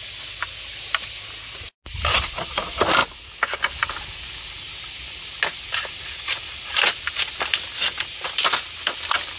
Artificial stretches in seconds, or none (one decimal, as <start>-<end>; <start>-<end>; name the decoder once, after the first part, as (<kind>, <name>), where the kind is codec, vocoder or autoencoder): 2.1-2.6 (vocoder, Vocos)

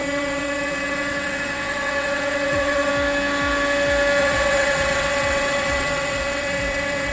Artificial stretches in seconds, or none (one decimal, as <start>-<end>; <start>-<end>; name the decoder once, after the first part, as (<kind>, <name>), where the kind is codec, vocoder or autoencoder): 0.0-2.9 (vocoder, WaveNeXt); 4.2-7.1